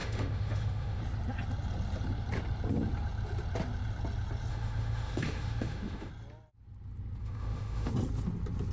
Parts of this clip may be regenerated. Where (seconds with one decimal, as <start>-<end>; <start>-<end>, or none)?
0.0-1.0; 4.5-6.1; 7.2-7.9